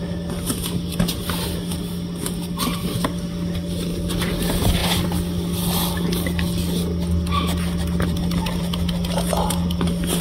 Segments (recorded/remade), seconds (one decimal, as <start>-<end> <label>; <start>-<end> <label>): 0.0-10.2 recorded

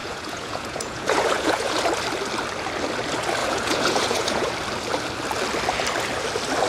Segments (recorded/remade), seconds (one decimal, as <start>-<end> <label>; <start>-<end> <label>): 0.0-1.8 remade; 1.8-3.4 recorded; 3.4-4.5 remade; 4.5-6.7 recorded

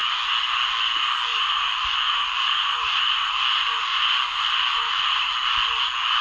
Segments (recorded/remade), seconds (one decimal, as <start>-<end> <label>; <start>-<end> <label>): 0.0-1.3 recorded; 1.3-3.4 remade; 3.4-4.7 recorded; 4.7-5.3 remade; 5.3-6.2 recorded

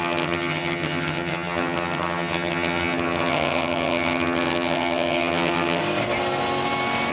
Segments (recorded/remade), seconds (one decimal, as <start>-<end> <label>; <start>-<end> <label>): 0.0-5.8 remade; 5.8-7.1 recorded